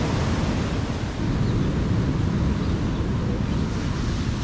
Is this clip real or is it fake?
real